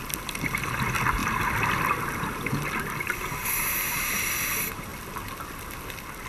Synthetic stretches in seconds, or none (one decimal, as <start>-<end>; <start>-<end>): none